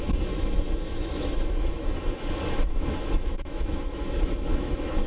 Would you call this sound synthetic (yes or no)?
yes